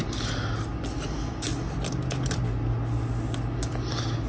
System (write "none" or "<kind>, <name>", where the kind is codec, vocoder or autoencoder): none